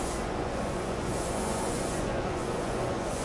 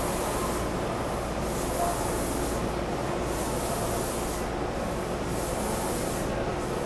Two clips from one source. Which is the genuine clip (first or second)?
second